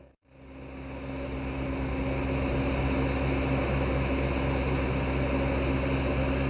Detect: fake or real real